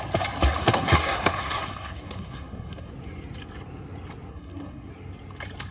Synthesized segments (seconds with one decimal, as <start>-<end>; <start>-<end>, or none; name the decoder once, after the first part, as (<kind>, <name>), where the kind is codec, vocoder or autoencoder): 0.6-2.9 (codec, SNAC); 4.3-4.9